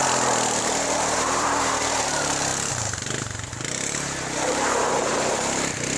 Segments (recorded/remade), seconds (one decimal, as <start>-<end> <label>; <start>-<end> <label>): 0.0-0.6 recorded; 0.6-6.0 remade